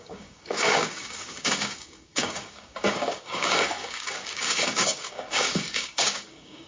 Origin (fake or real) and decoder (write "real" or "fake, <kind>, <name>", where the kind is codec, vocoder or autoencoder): fake, codec, DAC